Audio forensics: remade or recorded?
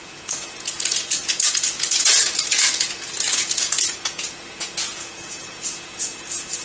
remade